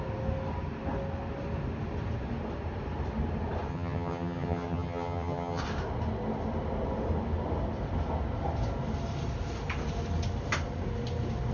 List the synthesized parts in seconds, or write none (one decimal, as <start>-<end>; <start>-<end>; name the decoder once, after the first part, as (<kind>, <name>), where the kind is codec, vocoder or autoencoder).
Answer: 3.7-5.6 (vocoder, HiFi-GAN)